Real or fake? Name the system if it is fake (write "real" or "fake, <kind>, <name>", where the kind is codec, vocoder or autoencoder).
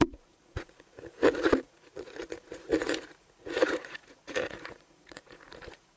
fake, vocoder, Vocos